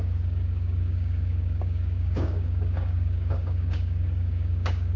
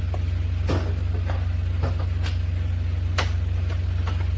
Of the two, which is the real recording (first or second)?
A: second